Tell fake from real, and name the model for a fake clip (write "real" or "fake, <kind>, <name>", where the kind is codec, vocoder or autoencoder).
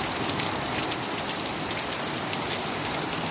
real